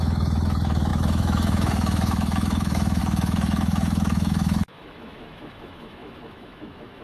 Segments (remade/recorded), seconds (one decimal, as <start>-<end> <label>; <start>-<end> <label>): 0.0-7.0 remade